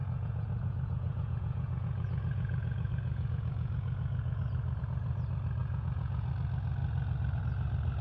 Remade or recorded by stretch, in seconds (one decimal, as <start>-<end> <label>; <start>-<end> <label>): 0.0-4.8 remade; 4.8-5.6 recorded; 5.6-6.3 remade; 6.3-8.0 recorded